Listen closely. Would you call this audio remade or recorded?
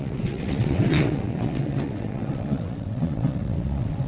remade